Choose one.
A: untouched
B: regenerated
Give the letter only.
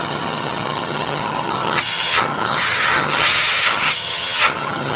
B